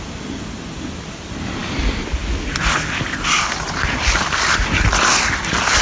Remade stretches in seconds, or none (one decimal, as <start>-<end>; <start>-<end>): none